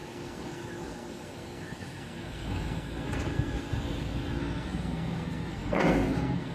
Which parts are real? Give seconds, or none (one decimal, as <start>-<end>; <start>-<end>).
none